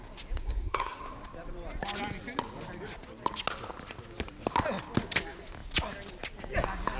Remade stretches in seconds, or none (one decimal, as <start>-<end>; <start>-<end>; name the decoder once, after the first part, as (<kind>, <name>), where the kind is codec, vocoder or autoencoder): 0.4-1.0 (codec, SNAC)